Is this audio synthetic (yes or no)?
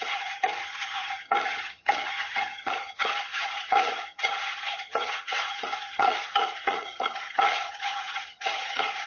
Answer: yes